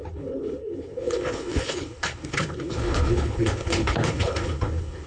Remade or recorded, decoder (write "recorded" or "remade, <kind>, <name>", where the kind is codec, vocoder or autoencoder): remade, codec, HILCodec